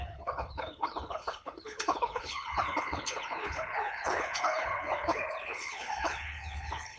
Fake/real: fake